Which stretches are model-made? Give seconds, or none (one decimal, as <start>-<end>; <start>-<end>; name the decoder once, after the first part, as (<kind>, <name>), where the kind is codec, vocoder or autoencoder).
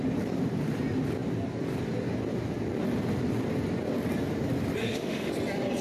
4.8-5.3 (autoencoder, DAC-VAE)